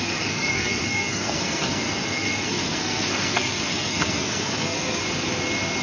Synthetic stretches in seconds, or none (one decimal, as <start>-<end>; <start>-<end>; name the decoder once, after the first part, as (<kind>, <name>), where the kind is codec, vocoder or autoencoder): 0.0-5.0 (codec, SNAC)